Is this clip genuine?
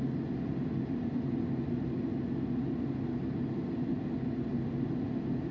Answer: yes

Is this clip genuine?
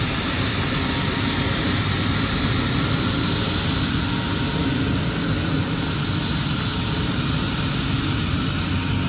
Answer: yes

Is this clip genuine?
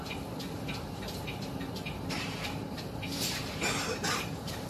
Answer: no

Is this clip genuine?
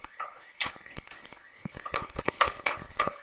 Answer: no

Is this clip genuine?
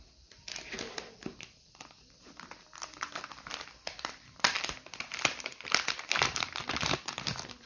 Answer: no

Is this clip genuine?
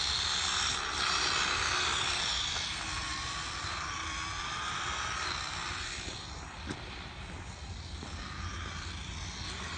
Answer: yes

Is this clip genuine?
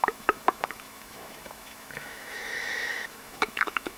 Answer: no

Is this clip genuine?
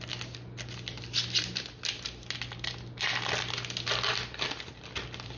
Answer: yes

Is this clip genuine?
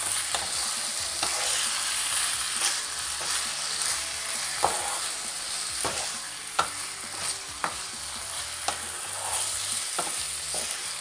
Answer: yes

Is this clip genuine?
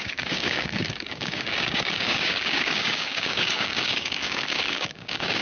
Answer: no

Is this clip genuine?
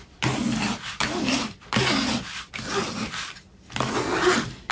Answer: yes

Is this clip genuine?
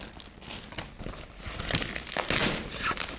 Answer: yes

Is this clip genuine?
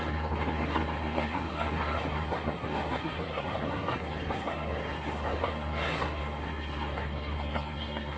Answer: no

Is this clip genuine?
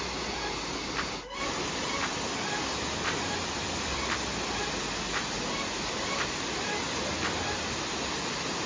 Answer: yes